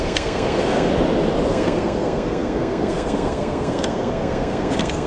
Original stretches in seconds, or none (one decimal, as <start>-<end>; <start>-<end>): 0.9-1.5